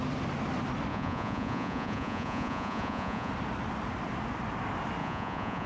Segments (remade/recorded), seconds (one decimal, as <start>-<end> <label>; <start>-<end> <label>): 0.0-0.9 recorded; 0.9-3.3 remade; 3.3-5.0 recorded; 5.0-5.7 remade